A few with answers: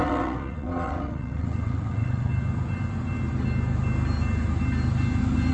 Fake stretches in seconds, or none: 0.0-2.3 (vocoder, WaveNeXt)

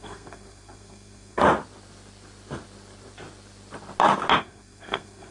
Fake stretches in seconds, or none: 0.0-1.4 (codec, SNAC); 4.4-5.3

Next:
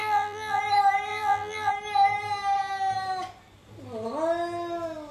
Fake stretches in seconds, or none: 0.0-0.6 (vocoder, BigVGAN v2); 1.1-1.7